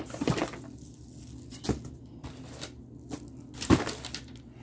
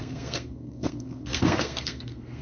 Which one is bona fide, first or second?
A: first